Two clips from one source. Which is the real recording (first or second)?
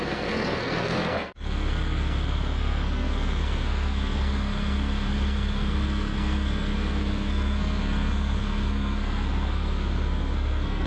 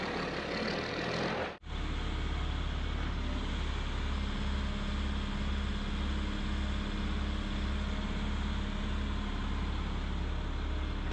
second